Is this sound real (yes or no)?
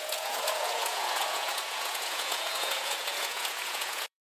no